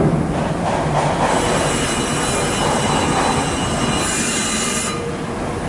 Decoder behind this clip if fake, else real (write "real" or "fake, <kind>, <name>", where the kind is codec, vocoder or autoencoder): real